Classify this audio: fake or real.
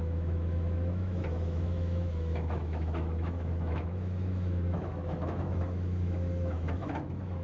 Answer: fake